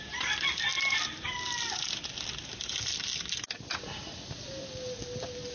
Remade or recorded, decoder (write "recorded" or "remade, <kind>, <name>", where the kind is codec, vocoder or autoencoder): recorded